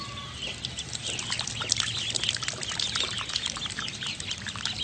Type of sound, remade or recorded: recorded